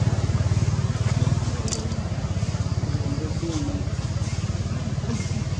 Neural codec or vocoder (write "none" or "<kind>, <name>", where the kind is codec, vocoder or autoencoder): none